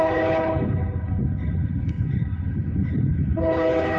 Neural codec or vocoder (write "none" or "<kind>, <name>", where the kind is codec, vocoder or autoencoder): codec, HILCodec